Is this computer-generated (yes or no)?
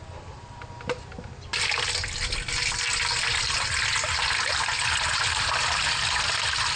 no